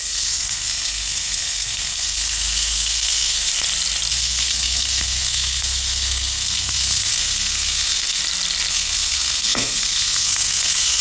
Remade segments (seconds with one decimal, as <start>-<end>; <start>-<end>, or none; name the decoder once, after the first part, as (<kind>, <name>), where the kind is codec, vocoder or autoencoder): 0.0-3.5 (codec, SNAC); 4.1-8.2; 8.7-11.0